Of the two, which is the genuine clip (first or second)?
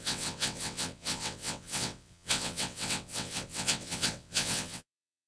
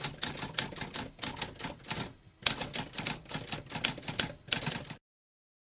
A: second